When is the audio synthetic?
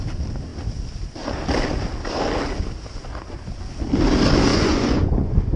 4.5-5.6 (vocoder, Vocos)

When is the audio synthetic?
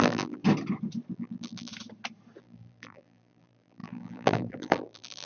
0.0-0.4 (vocoder, BigVGAN v2); 1.1-1.7; 2.4-5.3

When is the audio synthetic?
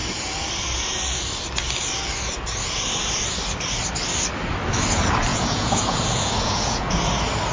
5.3-6.9 (vocoder, Vocos)